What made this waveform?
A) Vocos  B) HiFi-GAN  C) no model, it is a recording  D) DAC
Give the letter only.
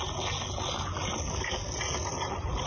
C